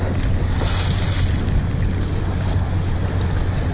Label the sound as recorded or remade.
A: recorded